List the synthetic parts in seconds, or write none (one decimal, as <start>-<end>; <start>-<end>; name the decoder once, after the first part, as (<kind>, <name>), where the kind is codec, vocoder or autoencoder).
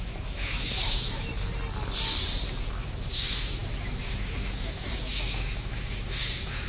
0.0-1.3 (autoencoder, DAC-VAE); 2.6-6.7